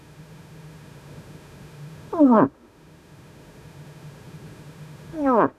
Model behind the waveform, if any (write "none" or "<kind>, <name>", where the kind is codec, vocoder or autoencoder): autoencoder, DAC-VAE